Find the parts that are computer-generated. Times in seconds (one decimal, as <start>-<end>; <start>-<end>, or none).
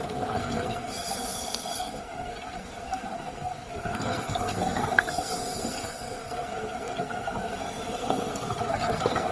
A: 0.0-9.3